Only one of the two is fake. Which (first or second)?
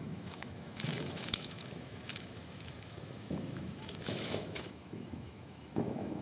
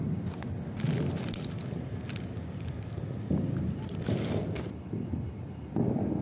first